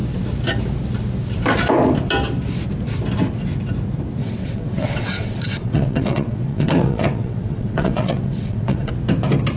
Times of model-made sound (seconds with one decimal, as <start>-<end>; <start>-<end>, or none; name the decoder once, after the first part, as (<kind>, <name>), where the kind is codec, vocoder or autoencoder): 4.2-8.9 (vocoder, WaveNeXt)

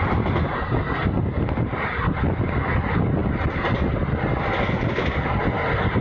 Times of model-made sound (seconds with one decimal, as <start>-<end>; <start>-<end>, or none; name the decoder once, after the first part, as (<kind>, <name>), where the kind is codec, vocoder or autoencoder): none

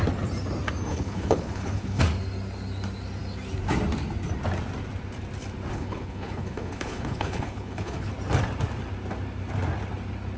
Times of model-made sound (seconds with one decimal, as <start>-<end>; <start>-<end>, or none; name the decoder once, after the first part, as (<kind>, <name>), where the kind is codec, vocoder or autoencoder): 0.9-2.0 (codec, HILCodec); 5.7-8.1

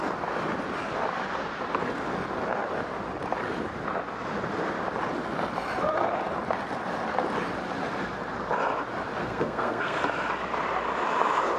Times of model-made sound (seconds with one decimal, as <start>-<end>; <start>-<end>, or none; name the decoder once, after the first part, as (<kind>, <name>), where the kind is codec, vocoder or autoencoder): 9.2-10.0 (codec, SNAC)

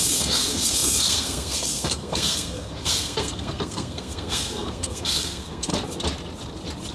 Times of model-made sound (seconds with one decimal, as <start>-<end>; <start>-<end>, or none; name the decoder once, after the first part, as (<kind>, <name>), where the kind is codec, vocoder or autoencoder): 0.0-5.7 (codec, SNAC)

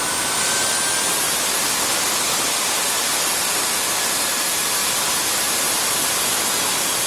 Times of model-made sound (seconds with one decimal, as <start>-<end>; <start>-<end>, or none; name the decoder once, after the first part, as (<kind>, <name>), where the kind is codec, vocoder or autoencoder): none

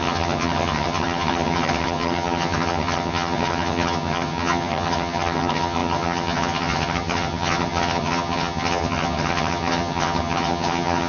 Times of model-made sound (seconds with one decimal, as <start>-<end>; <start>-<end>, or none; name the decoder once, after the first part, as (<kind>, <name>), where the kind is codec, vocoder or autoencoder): 0.0-11.1 (vocoder, HiFi-GAN)